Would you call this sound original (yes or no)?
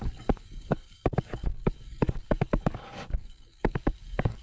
no